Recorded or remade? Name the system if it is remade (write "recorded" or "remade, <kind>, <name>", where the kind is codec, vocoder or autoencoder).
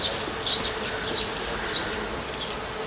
recorded